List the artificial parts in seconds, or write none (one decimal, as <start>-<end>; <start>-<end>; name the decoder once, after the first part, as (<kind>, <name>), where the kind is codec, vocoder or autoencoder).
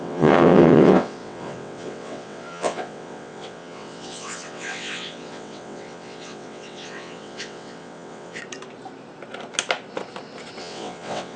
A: 0.0-8.4 (vocoder, WaveNeXt); 10.6-11.4